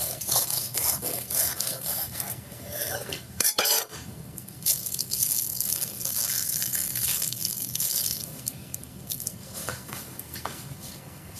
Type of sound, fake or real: fake